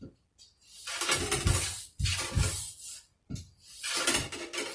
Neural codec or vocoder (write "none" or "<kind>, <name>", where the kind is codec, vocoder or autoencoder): none